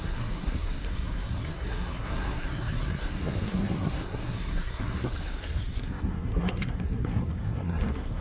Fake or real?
fake